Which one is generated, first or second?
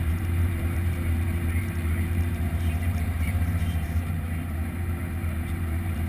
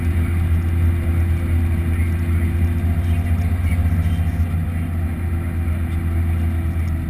first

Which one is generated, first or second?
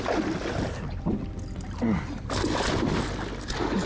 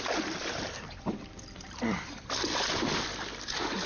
second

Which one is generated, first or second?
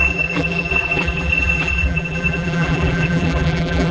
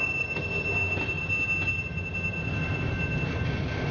first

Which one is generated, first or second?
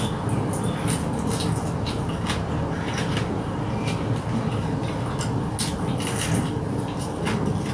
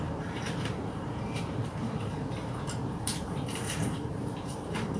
second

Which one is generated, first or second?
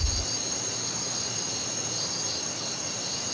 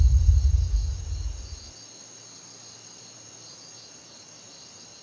first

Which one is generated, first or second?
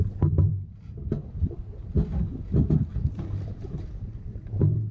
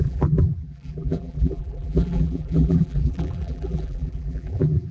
second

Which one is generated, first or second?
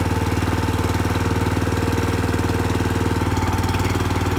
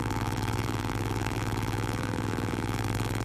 second